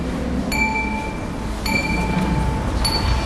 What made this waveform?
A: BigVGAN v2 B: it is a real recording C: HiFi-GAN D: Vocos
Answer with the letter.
B